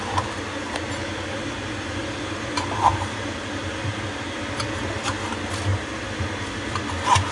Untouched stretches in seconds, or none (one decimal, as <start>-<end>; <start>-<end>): 0.0-1.0; 4.0-5.7; 6.5-7.3